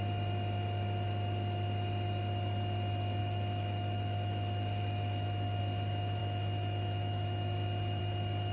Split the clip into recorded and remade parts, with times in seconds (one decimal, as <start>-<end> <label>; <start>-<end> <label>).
0.0-3.2 recorded; 3.2-5.6 remade; 5.6-6.2 recorded; 6.2-8.0 remade; 8.0-8.5 recorded